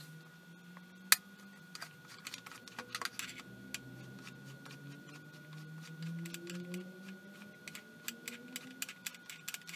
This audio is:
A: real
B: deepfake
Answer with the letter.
A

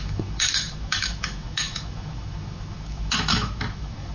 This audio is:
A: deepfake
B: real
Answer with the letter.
A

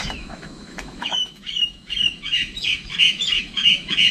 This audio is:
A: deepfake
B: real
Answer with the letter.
A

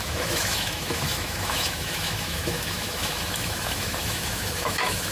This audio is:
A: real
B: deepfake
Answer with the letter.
B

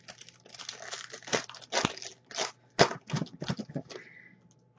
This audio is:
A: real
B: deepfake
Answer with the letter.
A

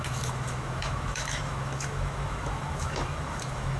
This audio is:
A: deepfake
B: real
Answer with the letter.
A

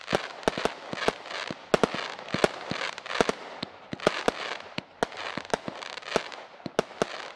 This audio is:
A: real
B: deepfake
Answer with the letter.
A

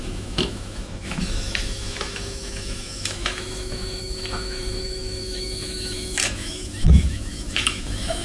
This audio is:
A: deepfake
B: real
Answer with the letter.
A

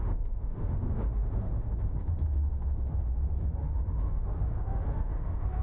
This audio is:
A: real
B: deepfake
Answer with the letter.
B